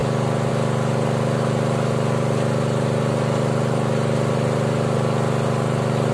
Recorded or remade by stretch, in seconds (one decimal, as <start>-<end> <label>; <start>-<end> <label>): 0.0-6.1 recorded